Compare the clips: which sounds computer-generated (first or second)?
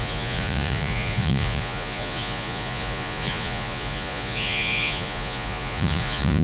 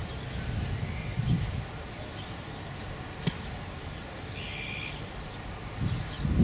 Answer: first